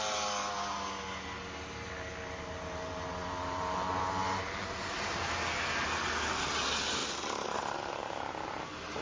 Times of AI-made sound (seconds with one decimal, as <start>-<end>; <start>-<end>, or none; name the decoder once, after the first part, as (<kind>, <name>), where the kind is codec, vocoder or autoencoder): none